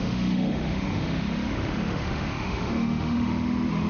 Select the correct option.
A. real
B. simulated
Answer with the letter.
B